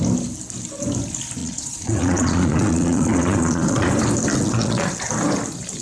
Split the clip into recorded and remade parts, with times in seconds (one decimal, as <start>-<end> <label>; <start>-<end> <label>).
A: 0.0-1.4 recorded; 1.4-3.9 remade; 3.9-4.3 recorded; 4.3-4.9 remade; 4.9-5.8 recorded